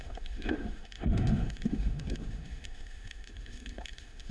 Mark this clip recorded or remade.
remade